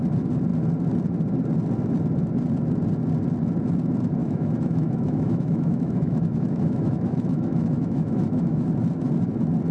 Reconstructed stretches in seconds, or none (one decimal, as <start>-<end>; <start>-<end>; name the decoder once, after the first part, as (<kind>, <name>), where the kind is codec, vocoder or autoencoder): 4.2-8.7 (autoencoder, DAC-VAE)